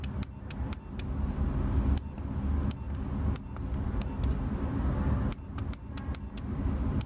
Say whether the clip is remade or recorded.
recorded